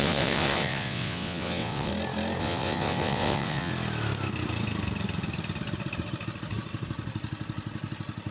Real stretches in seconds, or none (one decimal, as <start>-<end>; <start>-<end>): 1.9-2.4; 3.7-8.3